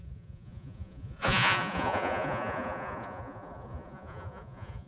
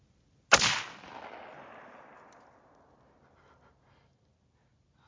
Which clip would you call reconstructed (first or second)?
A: first